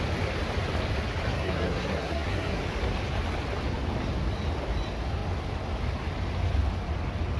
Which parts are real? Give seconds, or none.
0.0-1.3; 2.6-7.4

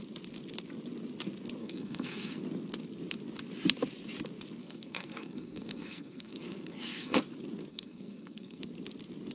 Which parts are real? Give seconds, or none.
0.0-1.6; 2.4-4.6; 7.2-7.7; 8.6-9.3